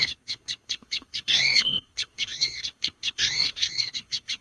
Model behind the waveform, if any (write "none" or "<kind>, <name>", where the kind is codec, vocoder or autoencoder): codec, SNAC